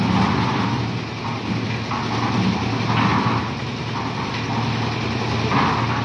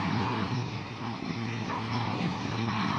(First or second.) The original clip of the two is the first